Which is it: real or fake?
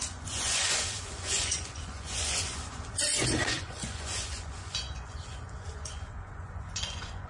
fake